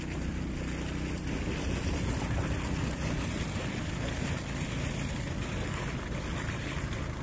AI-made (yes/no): no